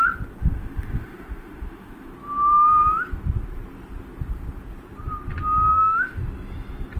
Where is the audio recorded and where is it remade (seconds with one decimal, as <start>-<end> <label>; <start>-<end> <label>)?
0.0-0.4 recorded; 0.4-2.1 remade; 2.1-5.7 recorded; 5.7-6.2 remade; 6.2-7.0 recorded